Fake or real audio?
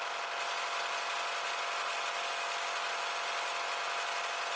real